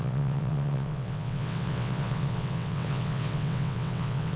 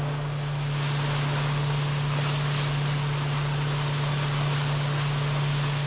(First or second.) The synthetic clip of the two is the first